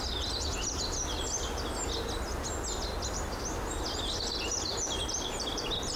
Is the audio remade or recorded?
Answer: recorded